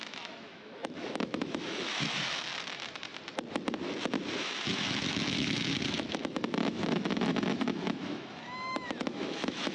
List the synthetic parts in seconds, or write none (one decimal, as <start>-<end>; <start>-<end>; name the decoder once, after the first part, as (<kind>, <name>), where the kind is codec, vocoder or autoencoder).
0.0-2.5 (autoencoder, DAC-VAE); 4.4-9.7

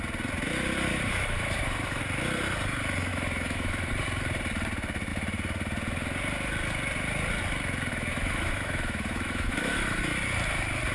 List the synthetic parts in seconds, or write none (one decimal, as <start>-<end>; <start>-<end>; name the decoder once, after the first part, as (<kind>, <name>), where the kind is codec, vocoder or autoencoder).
0.9-2.0 (autoencoder, DAC-VAE); 3.1-3.9; 7.9-10.0